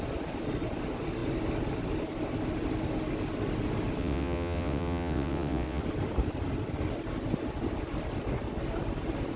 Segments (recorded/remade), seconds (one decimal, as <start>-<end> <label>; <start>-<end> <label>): 0.0-4.0 recorded; 4.0-5.8 remade; 5.8-9.4 recorded